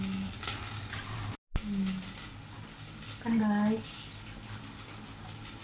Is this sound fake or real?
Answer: real